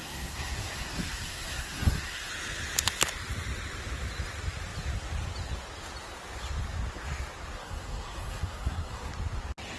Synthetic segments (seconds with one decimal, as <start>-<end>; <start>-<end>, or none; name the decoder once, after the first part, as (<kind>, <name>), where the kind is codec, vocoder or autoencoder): 0.0-2.3 (codec, SNAC); 7.6-9.1